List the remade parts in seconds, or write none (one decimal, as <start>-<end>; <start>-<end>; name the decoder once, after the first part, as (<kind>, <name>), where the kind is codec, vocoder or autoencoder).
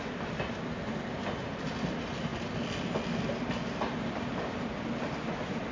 none